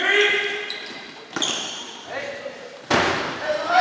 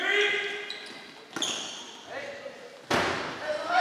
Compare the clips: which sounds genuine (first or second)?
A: second